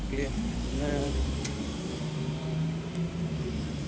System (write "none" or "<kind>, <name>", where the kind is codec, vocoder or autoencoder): vocoder, BigVGAN v2